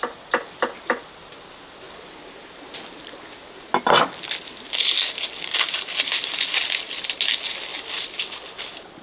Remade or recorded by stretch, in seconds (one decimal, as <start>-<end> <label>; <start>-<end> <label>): 0.0-9.0 recorded